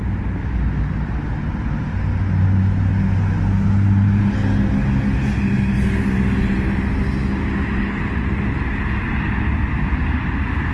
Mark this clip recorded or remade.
recorded